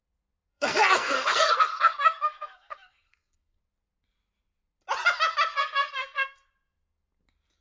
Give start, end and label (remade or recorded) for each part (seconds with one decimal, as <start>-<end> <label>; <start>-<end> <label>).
0.0-0.5 recorded; 0.5-3.6 remade; 3.6-5.5 recorded; 5.5-6.5 remade; 6.5-7.6 recorded